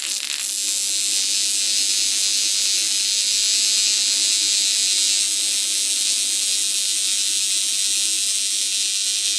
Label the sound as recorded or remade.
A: recorded